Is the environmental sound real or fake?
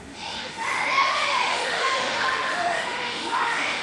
fake